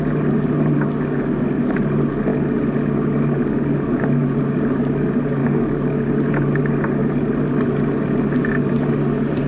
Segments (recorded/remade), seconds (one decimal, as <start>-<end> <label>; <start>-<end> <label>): 0.0-9.5 recorded